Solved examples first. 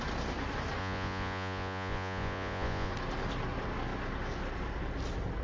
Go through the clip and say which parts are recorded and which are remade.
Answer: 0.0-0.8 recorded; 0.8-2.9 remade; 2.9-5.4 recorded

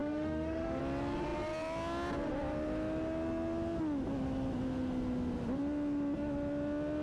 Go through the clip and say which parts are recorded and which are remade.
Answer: 0.0-0.8 remade; 0.8-7.0 recorded

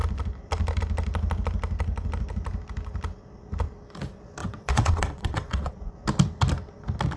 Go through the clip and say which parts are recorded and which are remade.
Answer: 0.0-4.4 recorded; 4.4-5.7 remade; 5.7-7.2 recorded

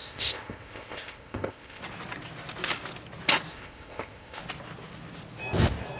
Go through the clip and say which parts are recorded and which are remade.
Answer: 0.0-1.8 remade; 1.8-3.5 recorded; 3.5-4.4 remade; 4.4-6.0 recorded

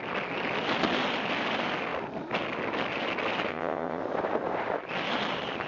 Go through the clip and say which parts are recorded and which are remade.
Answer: 0.0-3.5 recorded; 3.5-4.0 remade; 4.0-5.7 recorded

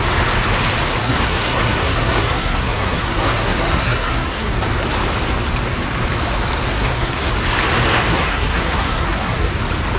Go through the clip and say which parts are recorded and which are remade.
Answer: 0.0-1.0 recorded; 1.0-4.5 remade; 4.5-6.7 recorded; 6.7-7.3 remade; 7.3-8.1 recorded; 8.1-9.5 remade; 9.5-10.0 recorded

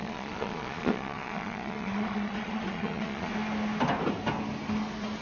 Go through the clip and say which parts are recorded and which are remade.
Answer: 0.0-3.3 remade; 3.3-5.2 recorded

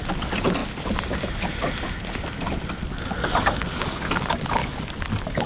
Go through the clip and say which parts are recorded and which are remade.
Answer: 0.0-4.6 recorded; 4.6-5.5 remade